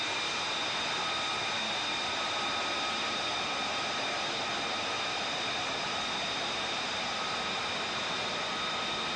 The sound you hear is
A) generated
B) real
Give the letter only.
B